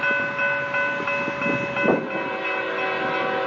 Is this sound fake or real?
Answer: real